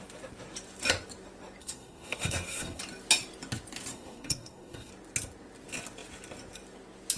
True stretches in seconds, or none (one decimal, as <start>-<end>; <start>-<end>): 0.0-1.6; 2.8-3.9; 4.9-7.2